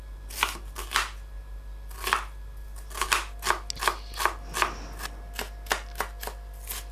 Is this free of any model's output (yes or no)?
yes